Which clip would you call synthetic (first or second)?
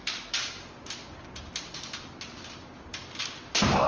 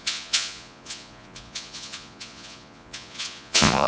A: second